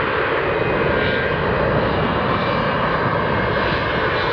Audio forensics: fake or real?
real